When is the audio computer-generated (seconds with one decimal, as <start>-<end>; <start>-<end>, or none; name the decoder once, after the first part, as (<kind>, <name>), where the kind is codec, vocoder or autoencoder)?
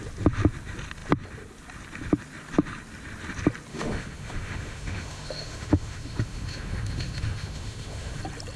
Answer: 3.7-8.2 (autoencoder, DAC-VAE)